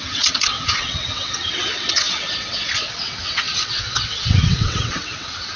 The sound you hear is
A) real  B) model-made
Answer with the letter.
B